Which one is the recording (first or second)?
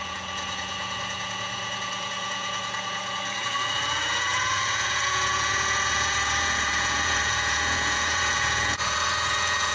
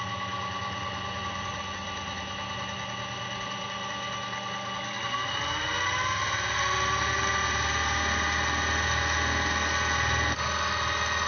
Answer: second